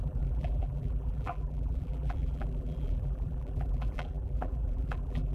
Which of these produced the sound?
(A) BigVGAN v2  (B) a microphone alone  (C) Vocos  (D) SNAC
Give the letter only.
A